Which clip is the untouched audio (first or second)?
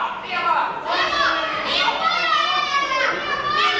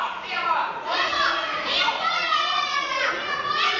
first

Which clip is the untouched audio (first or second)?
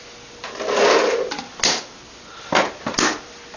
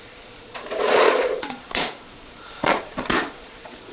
first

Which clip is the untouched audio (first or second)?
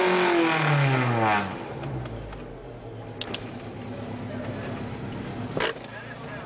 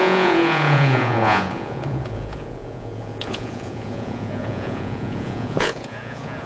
first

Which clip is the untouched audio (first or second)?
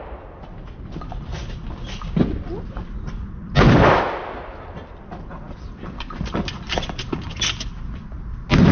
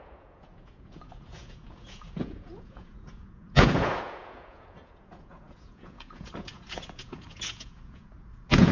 first